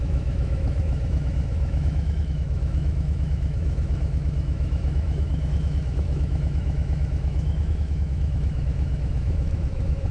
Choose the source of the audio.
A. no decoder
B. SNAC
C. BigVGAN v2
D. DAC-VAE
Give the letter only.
D